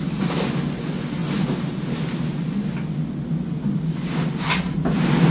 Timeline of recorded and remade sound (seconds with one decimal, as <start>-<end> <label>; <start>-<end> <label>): 0.0-5.3 recorded